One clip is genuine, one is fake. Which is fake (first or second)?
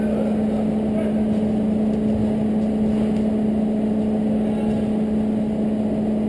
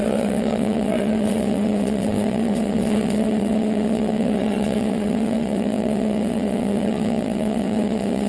second